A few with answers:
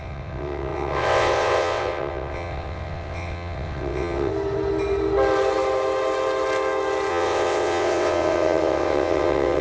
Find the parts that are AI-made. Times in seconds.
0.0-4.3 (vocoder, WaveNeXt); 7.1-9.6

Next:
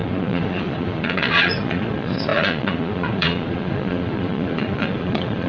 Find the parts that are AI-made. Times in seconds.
0.0-5.5 (vocoder, Vocos)

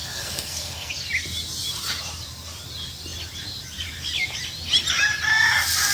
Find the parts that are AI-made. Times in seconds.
0.0-0.9 (codec, SNAC)

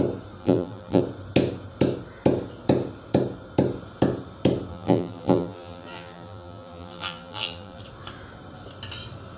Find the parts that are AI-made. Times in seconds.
0.4-1.0 (vocoder, BigVGAN v2); 4.7-7.8

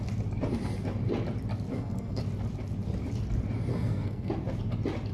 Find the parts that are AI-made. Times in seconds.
1.7-2.2 (codec, SNAC); 3.7-4.3

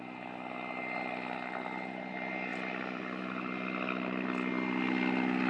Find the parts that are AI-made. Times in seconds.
none

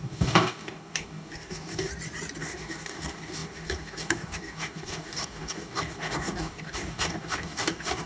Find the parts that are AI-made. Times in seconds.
0.0-1.9 (codec, DAC); 2.4-8.1

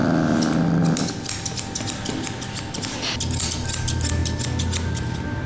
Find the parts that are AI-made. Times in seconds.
none